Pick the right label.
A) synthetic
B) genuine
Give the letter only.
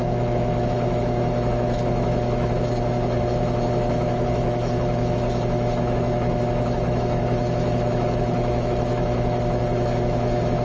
A